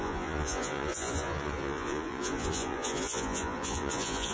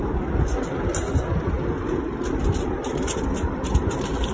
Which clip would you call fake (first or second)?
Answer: first